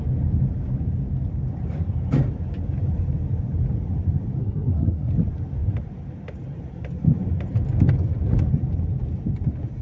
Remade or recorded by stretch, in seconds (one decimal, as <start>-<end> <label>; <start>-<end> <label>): 0.0-4.4 recorded; 4.4-5.1 remade; 5.1-9.8 recorded